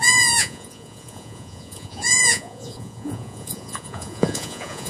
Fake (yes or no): yes